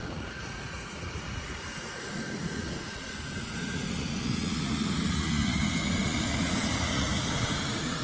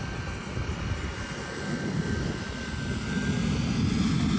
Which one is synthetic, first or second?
first